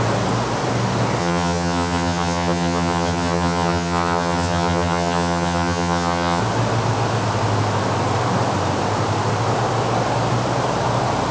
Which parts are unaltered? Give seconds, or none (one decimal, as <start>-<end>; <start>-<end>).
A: 0.0-1.2; 6.4-11.3